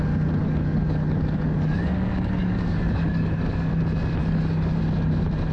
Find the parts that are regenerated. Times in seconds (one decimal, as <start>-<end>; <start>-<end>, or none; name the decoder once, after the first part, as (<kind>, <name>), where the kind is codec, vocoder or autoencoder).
0.4-3.7 (codec, DAC); 4.2-4.8